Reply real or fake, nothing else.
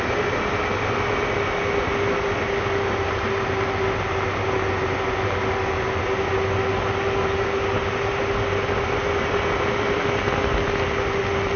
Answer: real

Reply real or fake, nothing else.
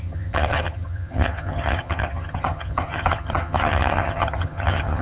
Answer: fake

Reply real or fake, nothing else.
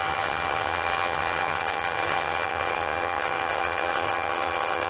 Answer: fake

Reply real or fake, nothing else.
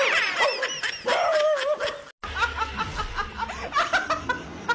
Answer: real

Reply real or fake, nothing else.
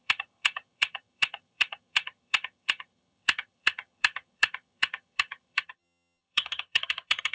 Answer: fake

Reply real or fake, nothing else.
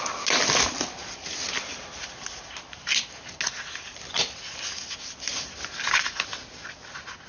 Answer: real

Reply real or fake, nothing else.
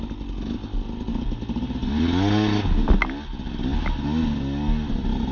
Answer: real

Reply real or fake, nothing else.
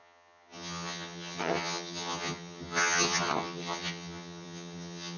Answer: fake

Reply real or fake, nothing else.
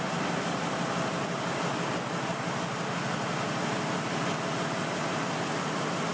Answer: real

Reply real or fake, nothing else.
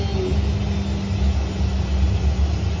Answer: real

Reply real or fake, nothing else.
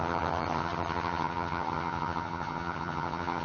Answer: fake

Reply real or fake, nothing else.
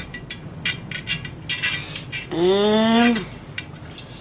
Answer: real